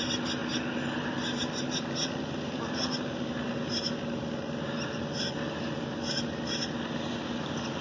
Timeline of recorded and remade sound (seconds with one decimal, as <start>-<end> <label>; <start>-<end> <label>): 0.0-7.8 recorded